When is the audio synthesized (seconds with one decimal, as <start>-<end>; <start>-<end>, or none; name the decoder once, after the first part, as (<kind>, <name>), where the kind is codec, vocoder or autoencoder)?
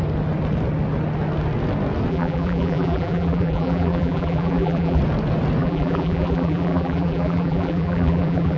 2.1-5.0 (vocoder, BigVGAN v2); 5.6-8.6